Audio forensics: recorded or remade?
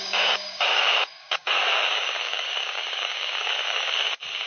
remade